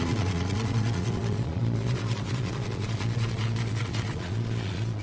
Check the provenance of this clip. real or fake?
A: fake